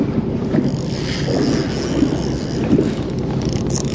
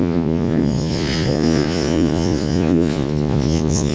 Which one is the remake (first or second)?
second